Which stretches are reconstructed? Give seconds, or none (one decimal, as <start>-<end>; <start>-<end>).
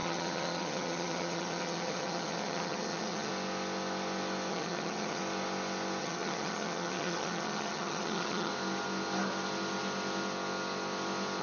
0.0-3.3; 4.5-5.2; 6.0-8.5